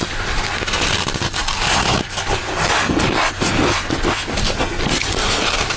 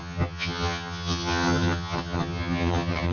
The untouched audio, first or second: first